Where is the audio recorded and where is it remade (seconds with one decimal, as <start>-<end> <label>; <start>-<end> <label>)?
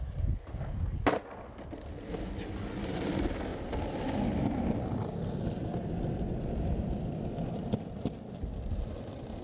0.0-9.4 recorded